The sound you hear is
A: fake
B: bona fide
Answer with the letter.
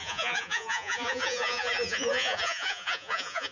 A